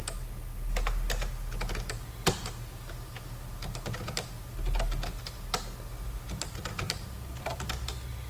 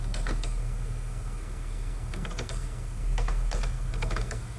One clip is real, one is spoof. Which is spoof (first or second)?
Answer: second